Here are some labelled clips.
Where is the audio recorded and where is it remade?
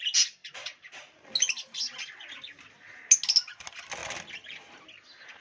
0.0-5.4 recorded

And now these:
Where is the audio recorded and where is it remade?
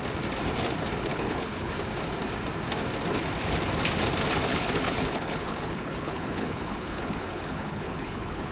0.0-1.1 recorded; 1.1-1.7 remade; 1.7-4.5 recorded; 4.5-8.5 remade